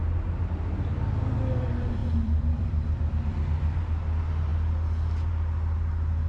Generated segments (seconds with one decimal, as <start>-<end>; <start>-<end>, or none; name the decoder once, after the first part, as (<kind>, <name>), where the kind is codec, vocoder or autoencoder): 2.0-3.8 (vocoder, BigVGAN v2)